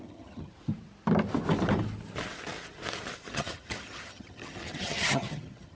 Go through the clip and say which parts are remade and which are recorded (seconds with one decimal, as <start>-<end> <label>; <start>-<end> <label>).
0.0-0.5 remade; 0.5-3.3 recorded; 3.3-5.7 remade